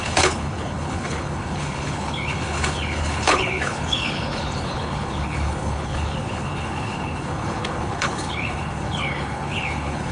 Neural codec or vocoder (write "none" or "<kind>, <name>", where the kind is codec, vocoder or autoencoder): codec, HILCodec